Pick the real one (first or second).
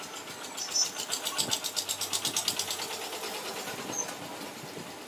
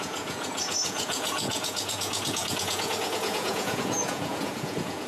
first